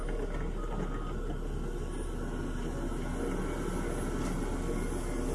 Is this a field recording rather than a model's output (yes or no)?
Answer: yes